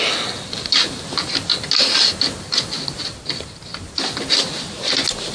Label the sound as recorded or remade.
recorded